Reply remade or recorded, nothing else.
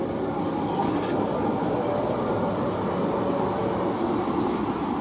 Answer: recorded